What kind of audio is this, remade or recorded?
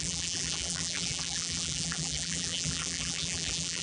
remade